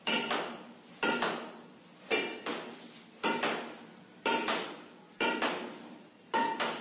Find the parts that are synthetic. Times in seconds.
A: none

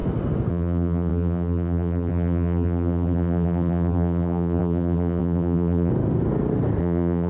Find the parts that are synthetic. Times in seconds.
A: 0.5-5.9 (vocoder, BigVGAN v2); 6.8-7.3

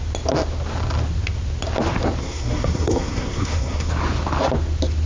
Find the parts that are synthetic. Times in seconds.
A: 2.2-3.9 (codec, SNAC)

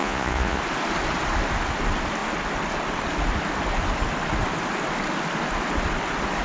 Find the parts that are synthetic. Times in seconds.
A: 0.0-0.6 (vocoder, Vocos)